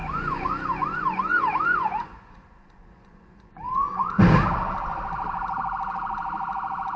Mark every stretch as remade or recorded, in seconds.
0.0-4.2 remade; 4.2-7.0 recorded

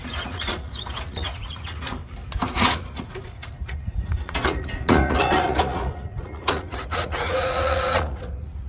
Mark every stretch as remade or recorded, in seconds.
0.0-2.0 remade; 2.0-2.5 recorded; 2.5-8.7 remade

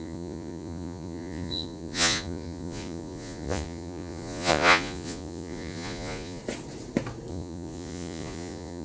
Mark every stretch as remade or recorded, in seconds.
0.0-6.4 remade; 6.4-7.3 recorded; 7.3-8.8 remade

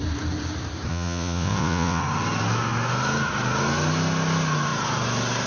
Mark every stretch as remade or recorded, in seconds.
0.0-0.9 recorded; 0.9-2.0 remade; 2.0-5.5 recorded